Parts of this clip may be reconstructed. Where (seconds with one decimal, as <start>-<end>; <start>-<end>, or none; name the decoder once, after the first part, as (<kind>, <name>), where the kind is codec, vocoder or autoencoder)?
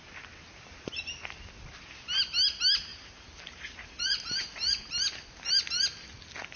2.9-5.5 (vocoder, BigVGAN v2)